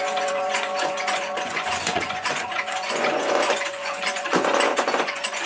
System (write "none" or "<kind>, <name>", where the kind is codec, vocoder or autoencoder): vocoder, Vocos